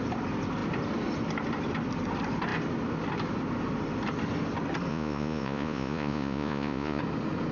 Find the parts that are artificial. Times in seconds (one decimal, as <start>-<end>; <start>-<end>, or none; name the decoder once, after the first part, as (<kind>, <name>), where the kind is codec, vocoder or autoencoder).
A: 4.9-7.0 (vocoder, Vocos)